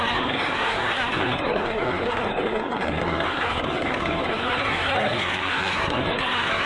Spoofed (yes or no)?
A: yes